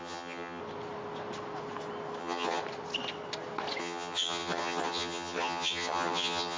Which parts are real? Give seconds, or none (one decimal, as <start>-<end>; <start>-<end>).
0.6-2.2; 2.6-3.8

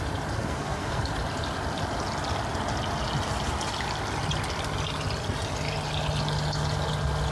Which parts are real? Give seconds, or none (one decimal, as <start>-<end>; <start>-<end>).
0.0-0.4; 1.0-7.3

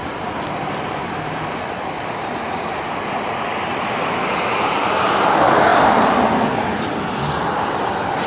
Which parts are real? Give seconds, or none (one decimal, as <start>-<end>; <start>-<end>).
5.0-8.3

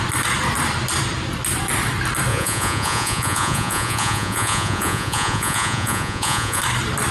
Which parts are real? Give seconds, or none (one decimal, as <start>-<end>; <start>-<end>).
0.0-2.3; 6.6-7.1

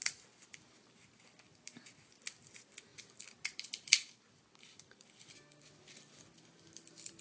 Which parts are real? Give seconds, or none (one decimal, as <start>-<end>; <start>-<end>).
0.0-7.2